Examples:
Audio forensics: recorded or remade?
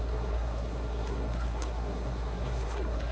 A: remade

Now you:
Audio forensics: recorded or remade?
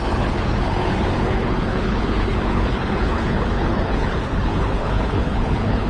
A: remade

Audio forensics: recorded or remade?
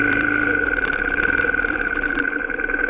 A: remade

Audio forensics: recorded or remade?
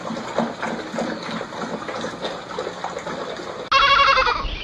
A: recorded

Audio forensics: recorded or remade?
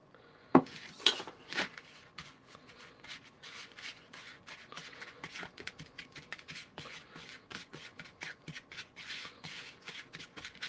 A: remade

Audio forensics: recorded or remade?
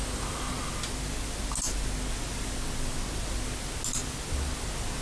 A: recorded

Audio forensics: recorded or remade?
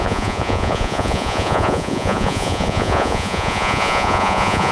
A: remade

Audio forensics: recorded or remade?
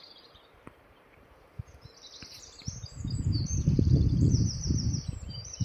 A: remade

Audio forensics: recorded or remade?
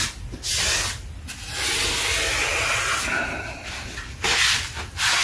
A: recorded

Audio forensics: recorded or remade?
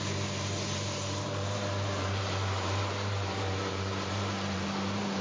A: remade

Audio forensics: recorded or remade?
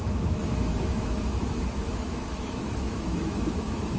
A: remade